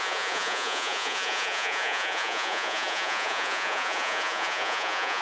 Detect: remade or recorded remade